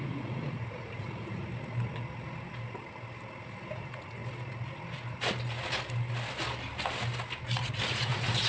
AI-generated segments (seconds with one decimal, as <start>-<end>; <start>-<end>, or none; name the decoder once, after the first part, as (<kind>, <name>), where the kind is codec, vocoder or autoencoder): 0.0-1.5 (vocoder, Vocos); 3.7-4.2; 7.9-8.5